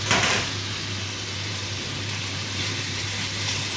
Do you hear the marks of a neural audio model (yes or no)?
yes